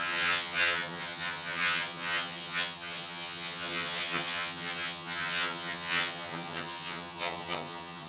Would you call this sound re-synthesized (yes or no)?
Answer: yes